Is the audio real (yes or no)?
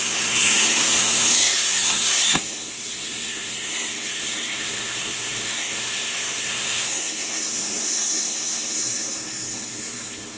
no